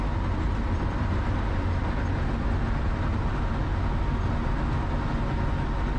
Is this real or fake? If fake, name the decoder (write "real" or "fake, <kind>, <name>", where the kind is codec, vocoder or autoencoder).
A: real